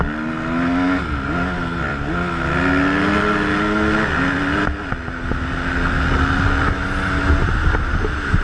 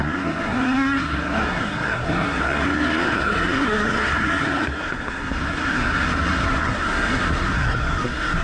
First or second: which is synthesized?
second